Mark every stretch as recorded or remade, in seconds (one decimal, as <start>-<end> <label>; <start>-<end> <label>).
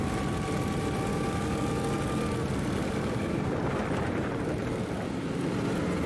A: 0.0-1.1 recorded; 1.1-1.7 remade; 1.7-2.8 recorded; 2.8-3.4 remade; 3.4-6.1 recorded